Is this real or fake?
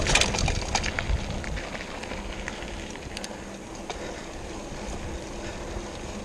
real